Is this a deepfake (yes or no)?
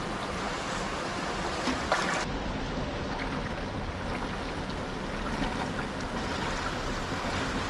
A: no